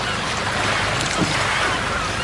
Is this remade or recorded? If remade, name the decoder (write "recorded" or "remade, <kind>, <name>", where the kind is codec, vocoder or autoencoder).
recorded